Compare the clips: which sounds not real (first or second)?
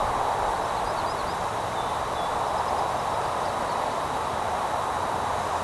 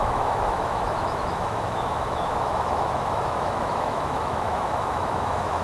second